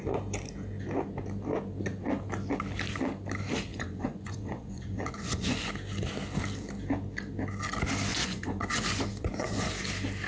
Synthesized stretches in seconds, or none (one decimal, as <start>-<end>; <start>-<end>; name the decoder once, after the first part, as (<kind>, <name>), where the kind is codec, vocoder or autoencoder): 3.7-5.7 (vocoder, Vocos); 8.1-9.7